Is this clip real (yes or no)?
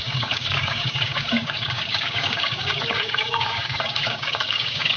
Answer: no